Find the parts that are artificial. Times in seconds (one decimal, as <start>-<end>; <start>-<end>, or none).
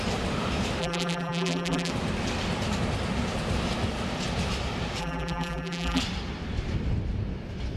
0.8-1.9; 5.0-6.0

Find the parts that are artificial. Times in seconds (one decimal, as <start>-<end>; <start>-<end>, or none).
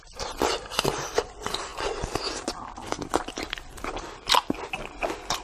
0.0-1.7; 4.9-5.4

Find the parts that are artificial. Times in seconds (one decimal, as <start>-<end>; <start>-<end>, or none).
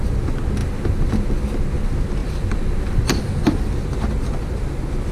0.6-1.3; 2.2-3.2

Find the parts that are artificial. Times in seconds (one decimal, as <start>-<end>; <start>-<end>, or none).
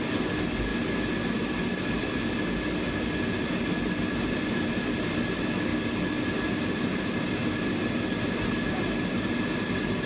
none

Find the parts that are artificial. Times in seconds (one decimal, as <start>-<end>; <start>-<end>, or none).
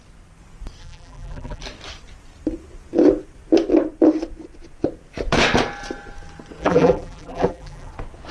0.8-1.6; 6.6-7.9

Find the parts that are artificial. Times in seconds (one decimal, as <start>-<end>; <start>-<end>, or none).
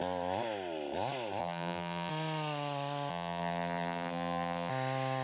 1.4-2.1; 3.1-4.7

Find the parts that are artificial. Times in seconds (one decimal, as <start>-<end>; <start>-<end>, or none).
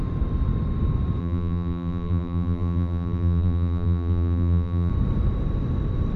1.2-4.9